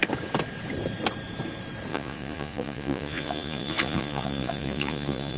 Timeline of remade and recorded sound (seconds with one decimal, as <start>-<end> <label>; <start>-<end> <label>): 0.0-1.9 recorded; 1.9-5.4 remade